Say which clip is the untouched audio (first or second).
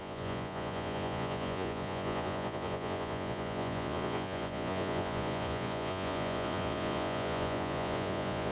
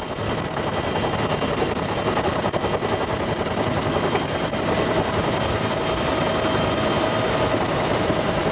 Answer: second